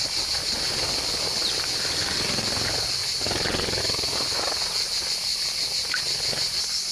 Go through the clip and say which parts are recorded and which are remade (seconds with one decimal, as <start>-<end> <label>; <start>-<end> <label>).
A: 0.0-6.9 recorded